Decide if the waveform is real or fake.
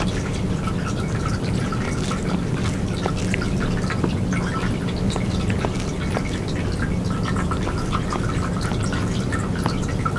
real